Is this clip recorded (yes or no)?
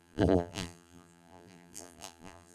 no